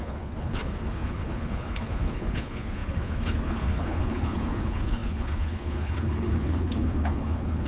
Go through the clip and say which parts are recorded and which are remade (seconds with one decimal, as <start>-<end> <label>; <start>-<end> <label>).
0.0-7.7 remade